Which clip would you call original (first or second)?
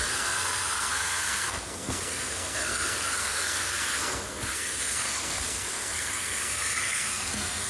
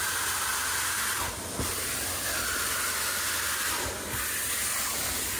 second